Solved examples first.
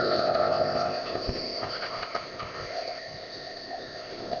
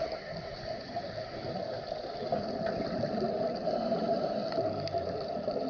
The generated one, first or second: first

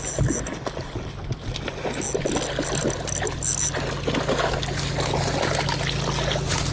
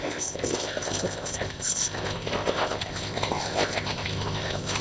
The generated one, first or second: second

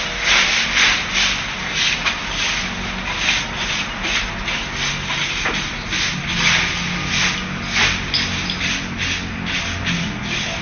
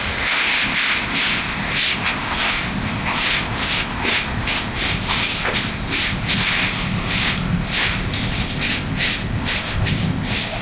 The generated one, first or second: second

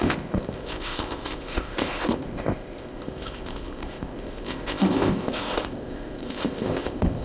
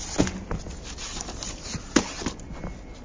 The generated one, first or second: first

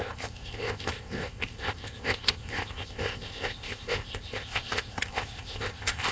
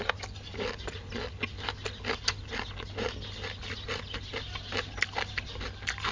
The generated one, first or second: first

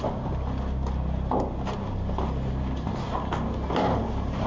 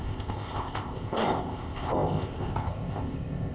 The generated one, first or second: second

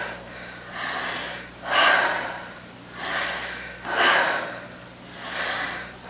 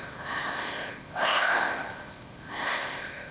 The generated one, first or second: second